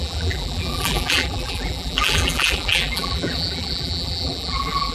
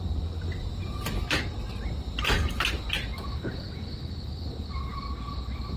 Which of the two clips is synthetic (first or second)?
first